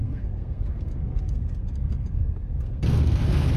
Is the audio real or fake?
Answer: fake